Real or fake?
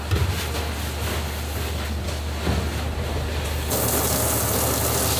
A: real